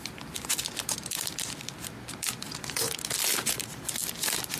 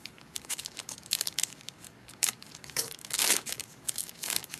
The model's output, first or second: second